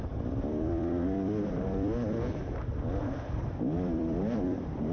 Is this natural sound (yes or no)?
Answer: no